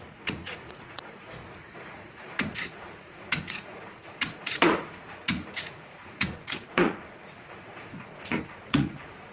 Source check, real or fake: fake